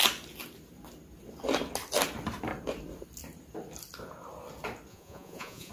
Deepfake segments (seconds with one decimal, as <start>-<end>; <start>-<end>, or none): 4.9-5.7